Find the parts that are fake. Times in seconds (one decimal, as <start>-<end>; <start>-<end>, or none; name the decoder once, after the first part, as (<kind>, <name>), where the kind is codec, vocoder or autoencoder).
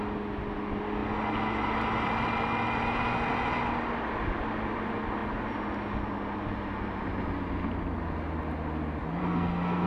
9.2-9.9 (codec, SNAC)